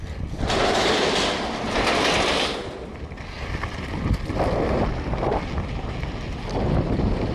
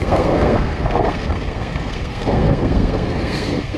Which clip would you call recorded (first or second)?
first